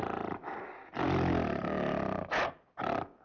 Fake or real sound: real